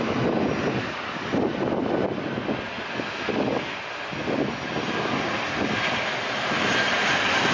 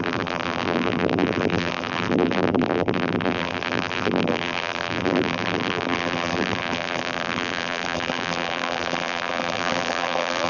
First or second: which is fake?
second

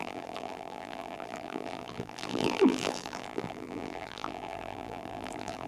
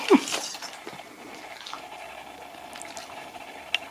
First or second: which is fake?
first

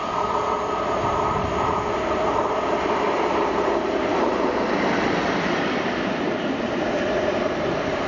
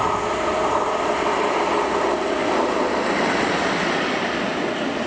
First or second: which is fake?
first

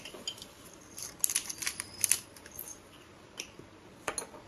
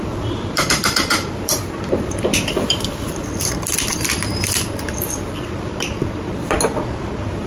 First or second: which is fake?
second